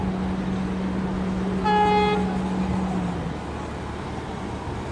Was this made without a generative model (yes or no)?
yes